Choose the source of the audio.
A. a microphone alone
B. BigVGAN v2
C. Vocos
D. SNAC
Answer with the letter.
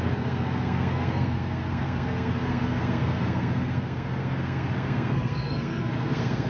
D